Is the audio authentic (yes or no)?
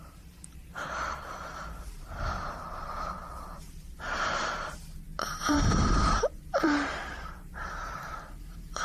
no